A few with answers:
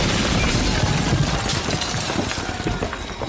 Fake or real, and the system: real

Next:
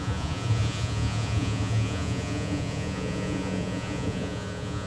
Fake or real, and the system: fake, vocoder, Vocos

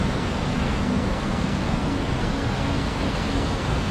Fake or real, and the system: fake, codec, SNAC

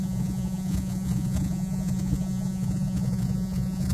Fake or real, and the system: fake, vocoder, Vocos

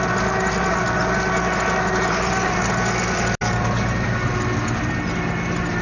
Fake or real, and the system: real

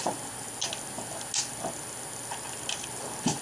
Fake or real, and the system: real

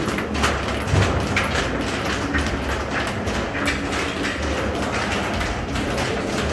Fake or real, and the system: real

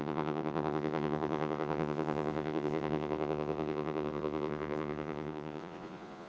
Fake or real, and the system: fake, vocoder, Vocos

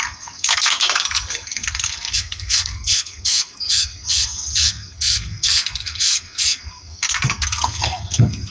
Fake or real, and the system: fake, codec, SNAC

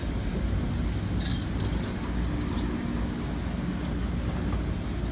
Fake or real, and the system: real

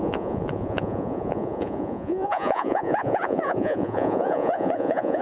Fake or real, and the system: fake, vocoder, Vocos